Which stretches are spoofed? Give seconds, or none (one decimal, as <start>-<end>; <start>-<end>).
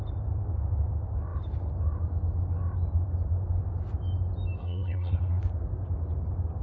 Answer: 4.6-5.4